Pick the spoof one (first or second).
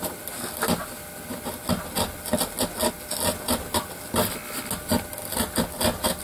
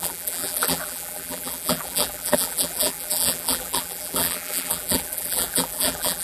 second